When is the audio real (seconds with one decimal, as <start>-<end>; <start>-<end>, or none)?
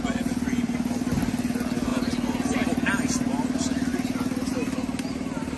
0.0-5.6